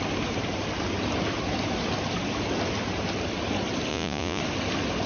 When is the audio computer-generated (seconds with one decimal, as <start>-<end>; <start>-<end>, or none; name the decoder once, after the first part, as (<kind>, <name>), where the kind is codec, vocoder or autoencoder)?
3.9-4.4 (vocoder, Vocos)